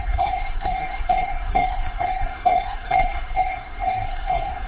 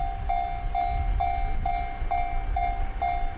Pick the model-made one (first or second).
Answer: first